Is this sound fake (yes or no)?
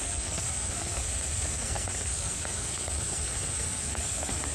yes